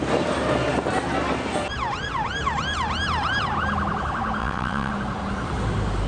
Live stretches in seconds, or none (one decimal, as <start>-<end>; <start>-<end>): 0.0-4.4; 4.9-6.1